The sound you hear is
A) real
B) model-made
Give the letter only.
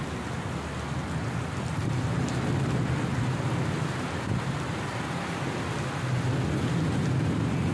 A